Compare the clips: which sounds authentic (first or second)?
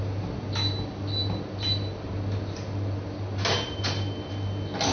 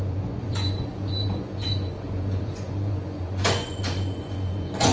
first